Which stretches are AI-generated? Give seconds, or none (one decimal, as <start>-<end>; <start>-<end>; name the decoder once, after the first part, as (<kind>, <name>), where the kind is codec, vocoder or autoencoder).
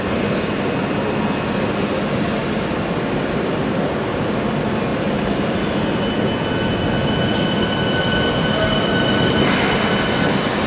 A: 4.9-5.8 (vocoder, BigVGAN v2)